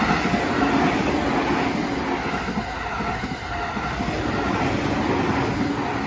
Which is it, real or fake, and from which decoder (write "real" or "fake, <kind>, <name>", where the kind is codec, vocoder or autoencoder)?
real